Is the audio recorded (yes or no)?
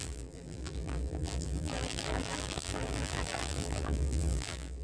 no